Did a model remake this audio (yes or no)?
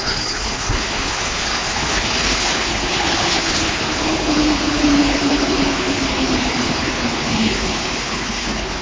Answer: yes